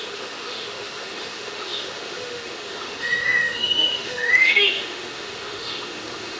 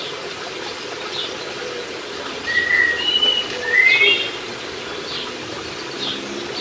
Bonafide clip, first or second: second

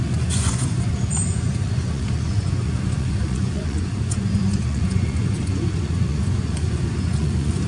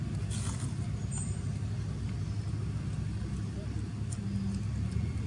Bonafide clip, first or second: second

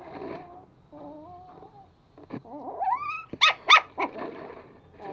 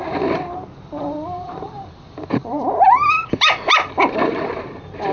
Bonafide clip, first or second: first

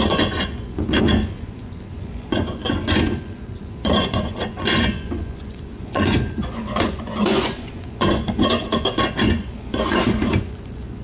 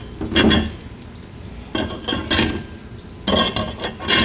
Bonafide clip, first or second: second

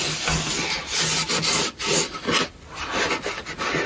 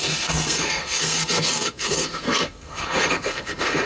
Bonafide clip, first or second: first